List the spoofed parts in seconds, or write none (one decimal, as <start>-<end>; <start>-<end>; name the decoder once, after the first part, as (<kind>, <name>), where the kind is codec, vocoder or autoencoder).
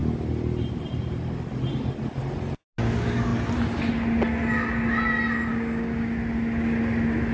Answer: 5.5-6.1 (codec, DAC)